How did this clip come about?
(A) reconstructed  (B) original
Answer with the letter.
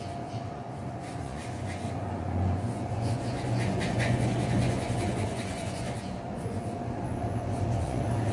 A